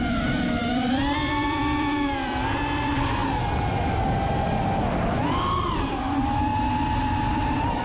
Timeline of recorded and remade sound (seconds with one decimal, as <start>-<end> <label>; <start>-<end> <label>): 0.0-3.2 remade; 3.2-5.4 recorded; 5.4-6.5 remade; 6.5-7.8 recorded